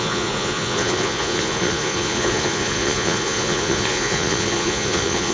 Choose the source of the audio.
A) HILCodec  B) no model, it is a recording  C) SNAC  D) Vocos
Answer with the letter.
D